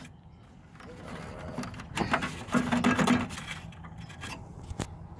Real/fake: real